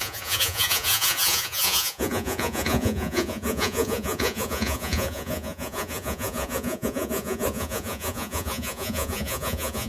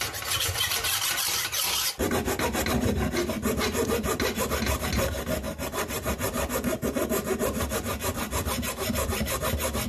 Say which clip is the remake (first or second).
first